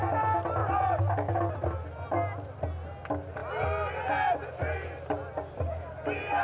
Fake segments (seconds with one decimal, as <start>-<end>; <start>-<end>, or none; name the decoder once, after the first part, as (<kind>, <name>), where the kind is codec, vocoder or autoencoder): none